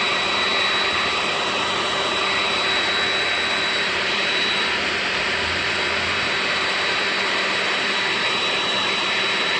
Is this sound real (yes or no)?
no